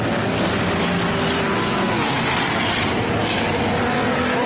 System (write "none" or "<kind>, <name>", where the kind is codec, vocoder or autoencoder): none